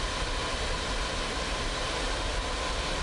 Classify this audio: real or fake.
real